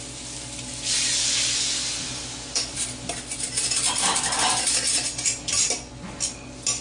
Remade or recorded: recorded